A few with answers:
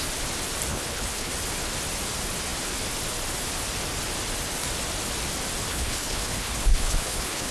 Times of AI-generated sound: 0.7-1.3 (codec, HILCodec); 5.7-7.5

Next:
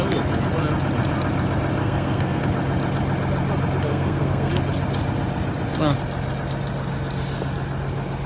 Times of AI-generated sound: 1.8-2.4 (codec, SNAC); 3.9-4.5

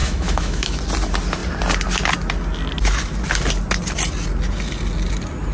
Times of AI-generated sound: 0.0-0.8 (autoencoder, DAC-VAE)

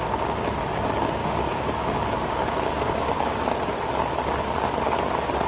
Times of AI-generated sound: 1.2-3.5 (codec, DAC)

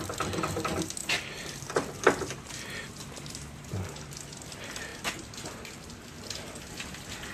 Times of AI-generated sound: none

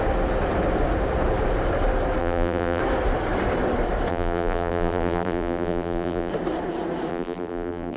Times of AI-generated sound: 2.2-2.8 (vocoder, BigVGAN v2); 4.1-6.3; 7.1-8.0